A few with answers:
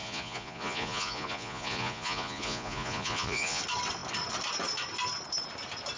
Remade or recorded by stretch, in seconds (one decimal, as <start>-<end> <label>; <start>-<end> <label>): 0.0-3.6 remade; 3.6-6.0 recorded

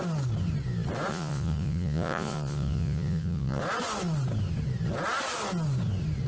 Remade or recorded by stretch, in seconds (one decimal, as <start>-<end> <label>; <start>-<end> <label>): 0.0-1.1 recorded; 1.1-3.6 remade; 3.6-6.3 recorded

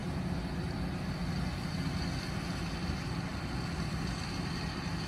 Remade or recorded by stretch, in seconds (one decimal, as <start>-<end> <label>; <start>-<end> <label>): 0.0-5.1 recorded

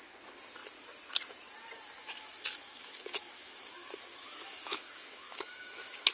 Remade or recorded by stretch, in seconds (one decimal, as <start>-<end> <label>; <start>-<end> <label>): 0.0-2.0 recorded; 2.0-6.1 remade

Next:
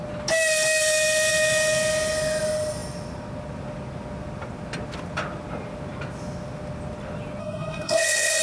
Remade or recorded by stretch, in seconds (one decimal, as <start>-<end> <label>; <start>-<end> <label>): 0.0-7.4 recorded; 7.4-8.4 remade

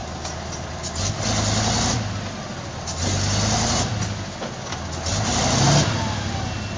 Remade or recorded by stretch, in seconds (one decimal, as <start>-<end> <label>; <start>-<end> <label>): 0.0-6.8 recorded